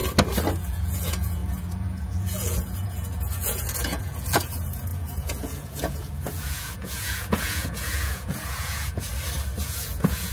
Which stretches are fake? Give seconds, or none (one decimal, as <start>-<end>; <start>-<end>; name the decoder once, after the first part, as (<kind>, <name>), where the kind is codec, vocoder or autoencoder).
0.6-9.1 (vocoder, Vocos); 9.6-10.3